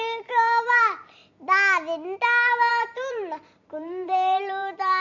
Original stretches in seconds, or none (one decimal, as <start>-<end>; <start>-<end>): 1.2-2.7